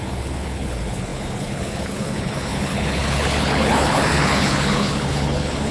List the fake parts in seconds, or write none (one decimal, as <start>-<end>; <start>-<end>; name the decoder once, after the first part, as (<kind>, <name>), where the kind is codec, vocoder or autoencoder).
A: 0.0-5.7 (codec, HILCodec)

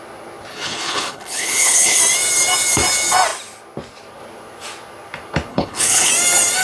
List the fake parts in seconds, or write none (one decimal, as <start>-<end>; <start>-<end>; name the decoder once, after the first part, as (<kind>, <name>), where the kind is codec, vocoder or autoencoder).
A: 0.5-2.0 (codec, HILCodec); 5.5-6.1

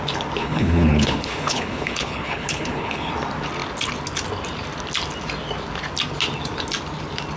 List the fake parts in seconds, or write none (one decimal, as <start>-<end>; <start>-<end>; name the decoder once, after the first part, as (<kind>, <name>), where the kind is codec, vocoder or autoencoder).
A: 0.4-3.1 (codec, HILCodec)

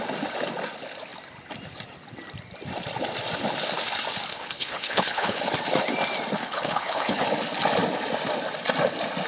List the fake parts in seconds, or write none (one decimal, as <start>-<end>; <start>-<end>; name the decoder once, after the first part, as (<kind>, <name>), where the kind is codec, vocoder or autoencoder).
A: 4.3-5.4 (codec, HILCodec); 6.4-7.2

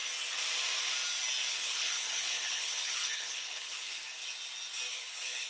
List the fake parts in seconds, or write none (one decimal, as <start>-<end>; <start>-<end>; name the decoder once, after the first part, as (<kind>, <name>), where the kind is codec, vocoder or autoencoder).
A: 1.5-4.0 (codec, HILCodec); 4.9-5.5

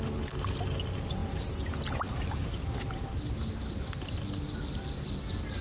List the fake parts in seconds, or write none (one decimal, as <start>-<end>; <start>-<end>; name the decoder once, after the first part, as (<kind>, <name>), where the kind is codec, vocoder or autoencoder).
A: none